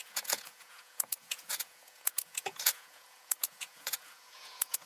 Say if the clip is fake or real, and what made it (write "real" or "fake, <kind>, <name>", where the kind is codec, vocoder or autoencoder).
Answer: fake, vocoder, Vocos